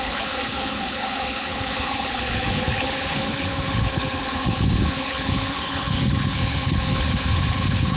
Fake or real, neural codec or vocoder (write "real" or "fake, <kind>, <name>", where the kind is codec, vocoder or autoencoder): fake, codec, HILCodec